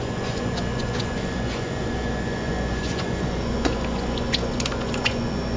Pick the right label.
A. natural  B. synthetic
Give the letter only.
B